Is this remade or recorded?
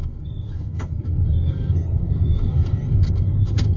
remade